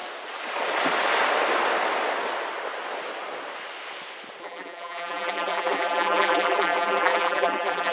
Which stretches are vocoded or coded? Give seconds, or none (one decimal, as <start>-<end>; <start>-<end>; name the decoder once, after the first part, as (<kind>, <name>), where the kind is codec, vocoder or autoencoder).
4.4-7.9 (vocoder, BigVGAN v2)